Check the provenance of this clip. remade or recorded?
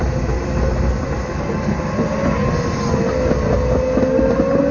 recorded